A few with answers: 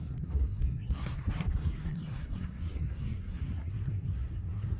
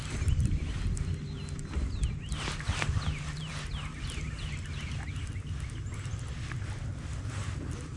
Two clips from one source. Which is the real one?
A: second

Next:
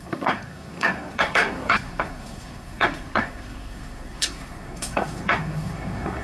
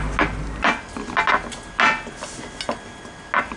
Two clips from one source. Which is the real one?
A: second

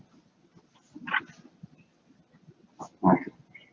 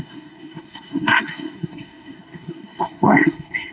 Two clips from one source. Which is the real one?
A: first